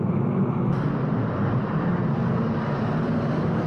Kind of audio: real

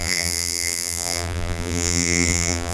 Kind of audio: fake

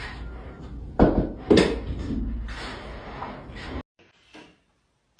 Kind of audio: real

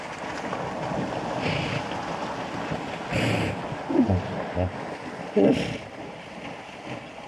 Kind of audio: real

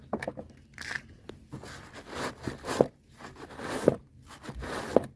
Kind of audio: real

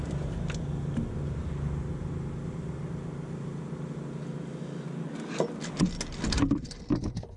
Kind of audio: real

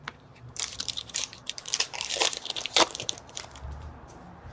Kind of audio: fake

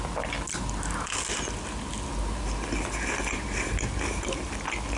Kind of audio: real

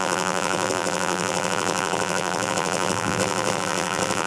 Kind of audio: fake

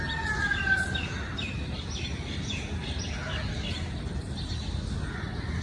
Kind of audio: real